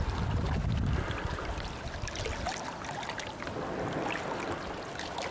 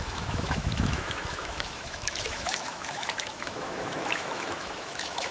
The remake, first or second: second